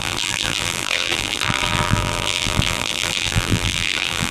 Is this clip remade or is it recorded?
remade